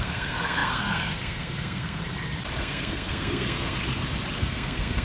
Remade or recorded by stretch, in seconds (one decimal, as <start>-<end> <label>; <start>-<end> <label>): 0.0-2.0 remade; 2.0-2.6 recorded; 2.6-3.8 remade; 3.8-4.4 recorded; 4.4-5.0 remade